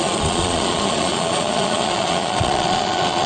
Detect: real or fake fake